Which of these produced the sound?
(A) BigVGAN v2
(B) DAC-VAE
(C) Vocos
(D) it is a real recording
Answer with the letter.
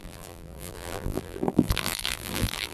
A